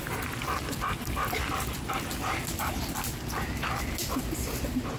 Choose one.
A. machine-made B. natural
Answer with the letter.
B